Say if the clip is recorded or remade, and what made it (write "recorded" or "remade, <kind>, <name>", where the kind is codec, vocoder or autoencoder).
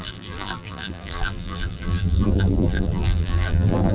remade, vocoder, BigVGAN v2